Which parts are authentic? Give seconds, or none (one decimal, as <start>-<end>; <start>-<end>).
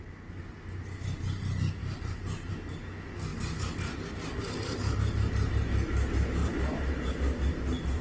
0.0-1.8; 2.5-6.4; 7.2-8.0